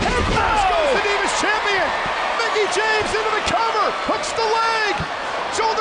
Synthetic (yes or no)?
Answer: no